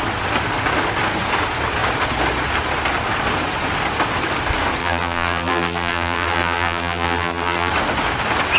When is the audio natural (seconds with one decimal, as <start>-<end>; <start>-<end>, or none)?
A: 0.0-4.8; 7.7-8.6